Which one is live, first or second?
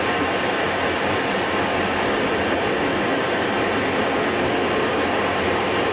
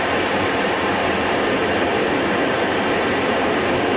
first